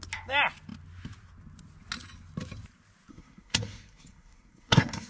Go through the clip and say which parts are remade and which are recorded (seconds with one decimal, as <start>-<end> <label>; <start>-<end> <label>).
0.0-3.1 recorded; 3.1-5.1 remade